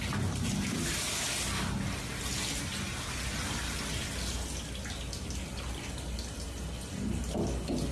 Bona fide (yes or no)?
yes